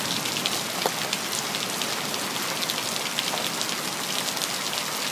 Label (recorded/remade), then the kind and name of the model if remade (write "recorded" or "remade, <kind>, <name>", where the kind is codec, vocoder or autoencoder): recorded